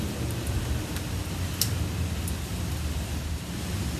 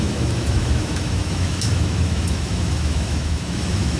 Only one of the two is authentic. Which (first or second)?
first